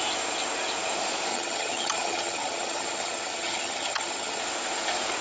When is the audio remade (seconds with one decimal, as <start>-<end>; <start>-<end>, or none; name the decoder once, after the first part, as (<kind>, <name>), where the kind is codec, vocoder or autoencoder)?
1.3-4.4 (vocoder, HiFi-GAN)